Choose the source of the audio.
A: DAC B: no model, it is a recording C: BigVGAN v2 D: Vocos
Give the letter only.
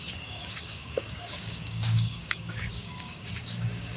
A